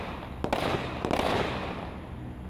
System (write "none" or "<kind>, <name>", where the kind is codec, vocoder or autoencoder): none